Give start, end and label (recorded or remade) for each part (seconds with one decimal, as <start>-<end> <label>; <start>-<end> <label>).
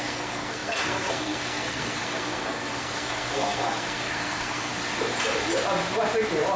0.0-4.7 remade; 4.7-6.6 recorded